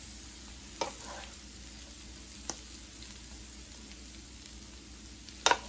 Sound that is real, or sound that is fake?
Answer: real